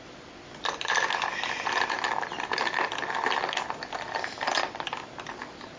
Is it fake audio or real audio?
fake